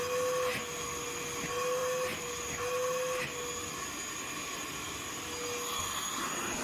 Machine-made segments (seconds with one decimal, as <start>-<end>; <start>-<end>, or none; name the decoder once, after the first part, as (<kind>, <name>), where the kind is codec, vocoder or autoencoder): none